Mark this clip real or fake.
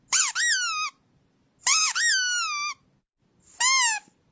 real